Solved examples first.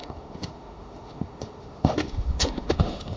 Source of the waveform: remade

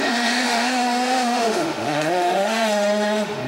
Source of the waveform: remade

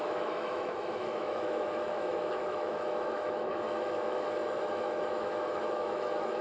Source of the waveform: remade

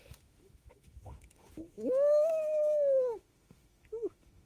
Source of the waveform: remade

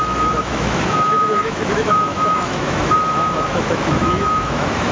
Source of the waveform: remade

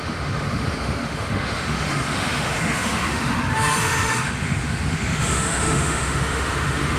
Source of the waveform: remade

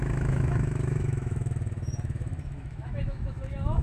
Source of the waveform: remade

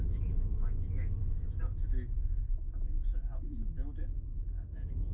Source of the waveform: remade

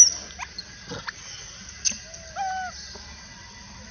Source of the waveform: recorded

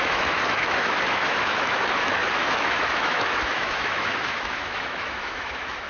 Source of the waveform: remade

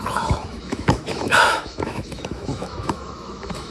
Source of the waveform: remade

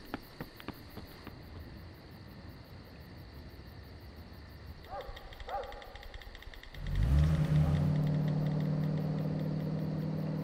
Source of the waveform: recorded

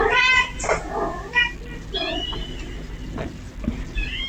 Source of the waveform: recorded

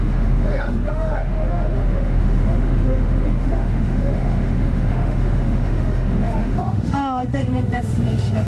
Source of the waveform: remade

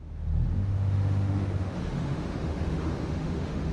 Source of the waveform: remade